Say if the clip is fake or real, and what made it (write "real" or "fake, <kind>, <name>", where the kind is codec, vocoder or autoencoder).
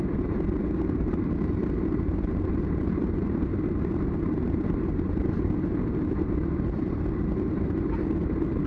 fake, vocoder, BigVGAN v2